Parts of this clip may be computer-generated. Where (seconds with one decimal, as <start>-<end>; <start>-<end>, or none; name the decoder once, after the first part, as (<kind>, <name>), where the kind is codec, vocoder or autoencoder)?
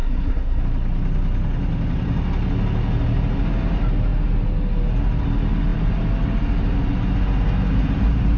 0.0-0.6 (codec, SNAC)